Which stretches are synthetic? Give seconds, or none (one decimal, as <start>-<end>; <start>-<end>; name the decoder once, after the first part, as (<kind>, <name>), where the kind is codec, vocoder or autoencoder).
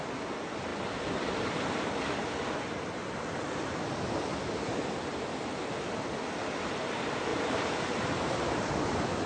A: 7.3-8.7 (vocoder, BigVGAN v2)